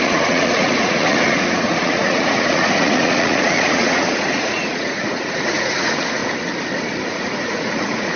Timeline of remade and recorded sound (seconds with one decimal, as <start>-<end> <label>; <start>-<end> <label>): 0.0-6.2 remade; 6.2-7.1 recorded; 7.1-8.2 remade